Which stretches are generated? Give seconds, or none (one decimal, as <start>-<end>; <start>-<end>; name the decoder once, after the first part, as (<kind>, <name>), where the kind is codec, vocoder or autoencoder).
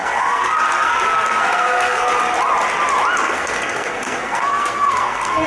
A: 0.0-2.1 (codec, SNAC); 3.2-5.5